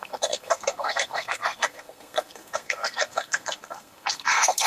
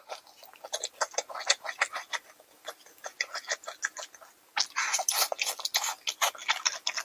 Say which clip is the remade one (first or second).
first